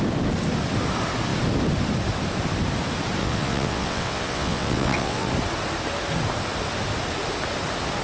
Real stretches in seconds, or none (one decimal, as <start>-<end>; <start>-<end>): 0.0-3.2; 5.3-8.0